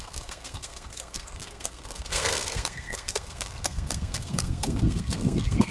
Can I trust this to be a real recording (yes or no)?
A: no